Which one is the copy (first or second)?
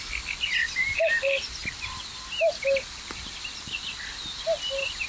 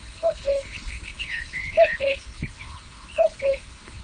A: second